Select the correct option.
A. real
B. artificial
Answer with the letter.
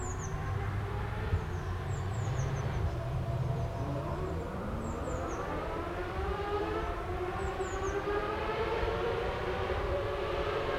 B